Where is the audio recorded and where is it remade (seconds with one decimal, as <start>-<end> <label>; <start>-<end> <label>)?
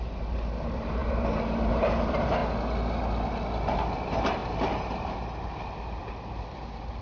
0.0-2.4 remade; 2.4-3.9 recorded; 3.9-7.0 remade